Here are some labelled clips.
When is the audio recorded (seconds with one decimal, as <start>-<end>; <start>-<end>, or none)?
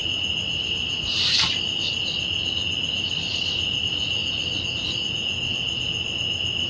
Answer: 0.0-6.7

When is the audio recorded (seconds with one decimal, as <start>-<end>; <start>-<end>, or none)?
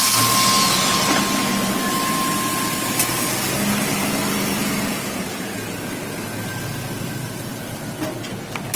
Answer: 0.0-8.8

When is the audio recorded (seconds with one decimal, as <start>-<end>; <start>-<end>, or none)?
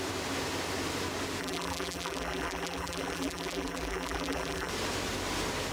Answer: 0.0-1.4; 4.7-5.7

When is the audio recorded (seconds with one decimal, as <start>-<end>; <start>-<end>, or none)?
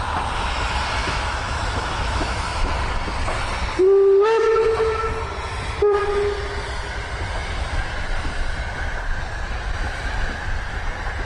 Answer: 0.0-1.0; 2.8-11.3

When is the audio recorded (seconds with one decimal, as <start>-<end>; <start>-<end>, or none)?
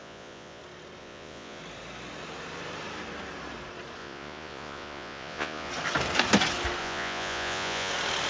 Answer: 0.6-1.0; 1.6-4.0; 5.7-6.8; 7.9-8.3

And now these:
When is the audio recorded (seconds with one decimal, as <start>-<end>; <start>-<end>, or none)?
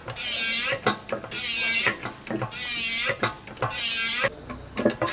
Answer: 0.0-5.1